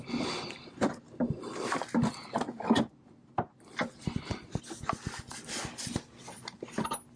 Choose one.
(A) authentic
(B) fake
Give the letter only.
A